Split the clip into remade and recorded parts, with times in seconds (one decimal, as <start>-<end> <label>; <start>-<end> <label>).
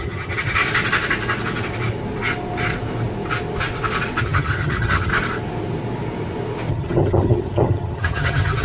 0.0-0.6 remade; 0.6-4.2 recorded; 4.2-5.1 remade; 5.1-6.7 recorded; 6.7-8.6 remade